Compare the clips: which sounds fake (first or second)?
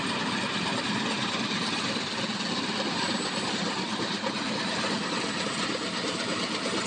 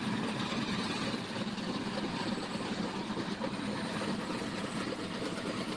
first